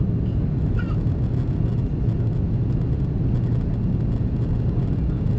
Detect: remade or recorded recorded